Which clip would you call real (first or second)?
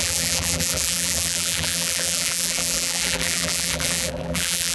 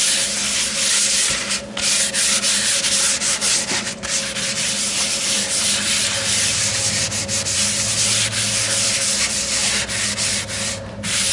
second